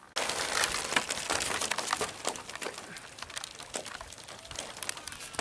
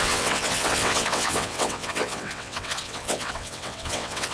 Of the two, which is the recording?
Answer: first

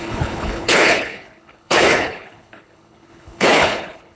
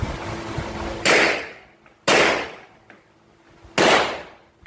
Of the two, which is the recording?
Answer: second